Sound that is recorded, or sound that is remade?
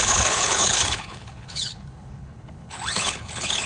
remade